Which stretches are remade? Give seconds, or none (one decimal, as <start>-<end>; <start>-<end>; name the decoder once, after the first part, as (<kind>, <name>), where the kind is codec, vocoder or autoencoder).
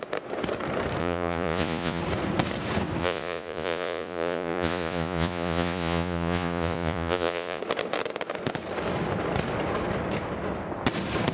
1.0-2.0 (vocoder, Vocos); 3.0-7.6